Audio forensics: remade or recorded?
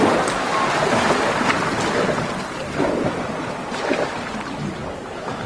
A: recorded